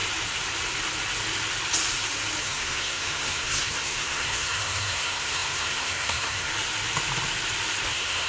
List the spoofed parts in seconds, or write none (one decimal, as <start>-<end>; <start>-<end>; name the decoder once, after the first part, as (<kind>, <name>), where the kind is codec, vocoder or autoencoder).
2.4-6.5 (codec, SNAC); 7.9-8.3